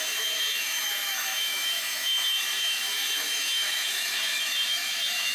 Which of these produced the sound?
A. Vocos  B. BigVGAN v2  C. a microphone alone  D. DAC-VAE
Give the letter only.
D